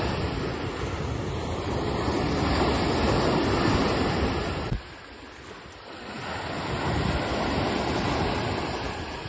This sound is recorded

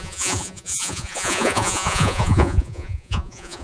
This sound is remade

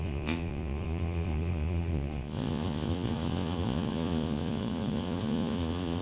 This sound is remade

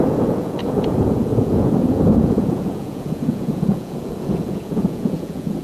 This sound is remade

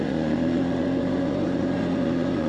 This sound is remade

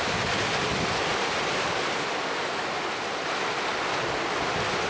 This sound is recorded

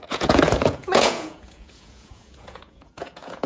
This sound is remade